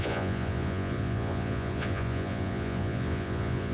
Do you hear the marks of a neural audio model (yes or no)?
yes